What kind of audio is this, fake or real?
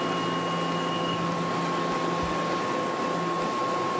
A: real